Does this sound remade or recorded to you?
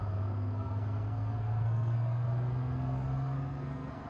remade